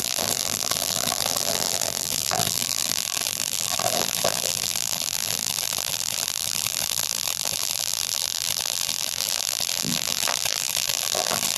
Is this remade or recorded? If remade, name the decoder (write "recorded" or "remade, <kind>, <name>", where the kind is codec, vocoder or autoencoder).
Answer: remade, vocoder, BigVGAN v2